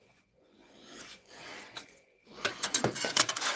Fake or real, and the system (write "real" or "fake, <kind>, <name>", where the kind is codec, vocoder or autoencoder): fake, vocoder, Vocos